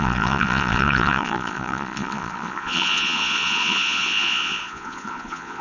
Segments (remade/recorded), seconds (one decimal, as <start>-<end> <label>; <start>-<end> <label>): 0.0-5.6 remade